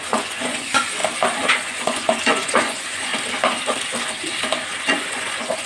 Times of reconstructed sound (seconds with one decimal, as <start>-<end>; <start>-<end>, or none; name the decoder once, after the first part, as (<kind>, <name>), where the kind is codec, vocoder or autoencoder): 0.0-1.0 (vocoder, Vocos); 1.5-3.1; 4.8-5.7